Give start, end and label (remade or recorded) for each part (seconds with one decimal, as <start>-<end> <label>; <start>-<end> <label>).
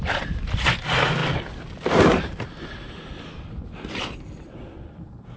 0.0-5.4 recorded